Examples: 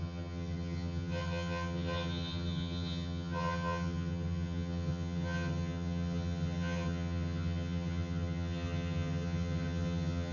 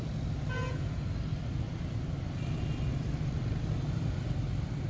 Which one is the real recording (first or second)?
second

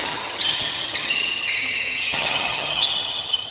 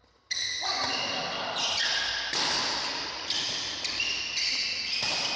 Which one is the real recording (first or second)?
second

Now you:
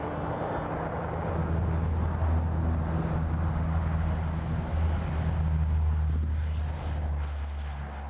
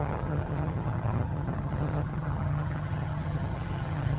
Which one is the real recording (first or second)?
first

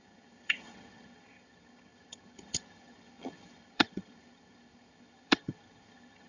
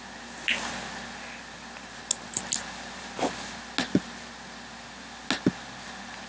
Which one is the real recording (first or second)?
second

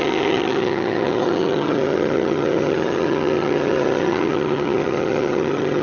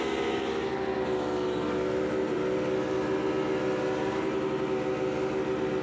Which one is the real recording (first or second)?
second